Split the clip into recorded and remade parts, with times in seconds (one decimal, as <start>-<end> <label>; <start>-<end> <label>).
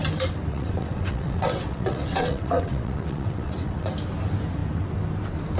0.0-0.5 recorded; 0.5-3.9 remade; 3.9-5.6 recorded